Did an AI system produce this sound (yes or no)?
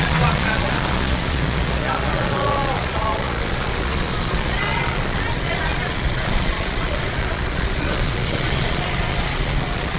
yes